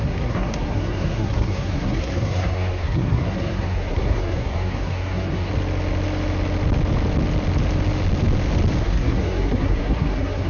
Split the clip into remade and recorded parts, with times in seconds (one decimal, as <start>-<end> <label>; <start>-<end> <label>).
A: 0.0-5.5 remade; 5.5-8.8 recorded; 8.8-10.5 remade